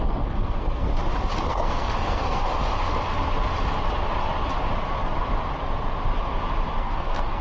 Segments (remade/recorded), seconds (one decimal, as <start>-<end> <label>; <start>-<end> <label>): 0.0-0.9 remade; 0.9-1.5 recorded; 1.5-2.4 remade; 2.4-6.8 recorded; 6.8-7.4 remade